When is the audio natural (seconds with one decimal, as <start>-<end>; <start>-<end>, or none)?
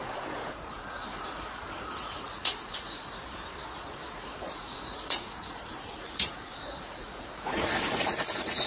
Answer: 3.2-4.1